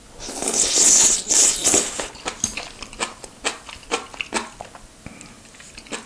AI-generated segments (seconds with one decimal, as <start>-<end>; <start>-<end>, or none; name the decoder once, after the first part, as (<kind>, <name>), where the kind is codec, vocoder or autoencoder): none